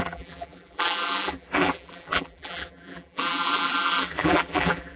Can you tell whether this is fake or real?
fake